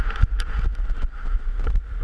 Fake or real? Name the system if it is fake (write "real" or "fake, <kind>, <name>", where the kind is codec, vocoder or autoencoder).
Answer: fake, vocoder, BigVGAN v2